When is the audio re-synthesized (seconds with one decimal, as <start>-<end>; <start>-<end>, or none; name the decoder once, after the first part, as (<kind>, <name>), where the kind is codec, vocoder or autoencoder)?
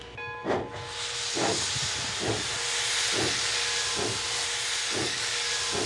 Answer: 4.8-5.5 (codec, DAC)